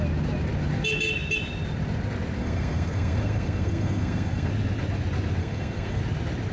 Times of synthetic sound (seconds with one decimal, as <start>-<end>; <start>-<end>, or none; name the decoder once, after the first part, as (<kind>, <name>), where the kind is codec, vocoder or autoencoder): 2.4-4.5 (codec, SNAC); 5.4-6.0